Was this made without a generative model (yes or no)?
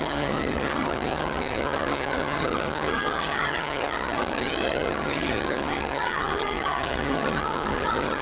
no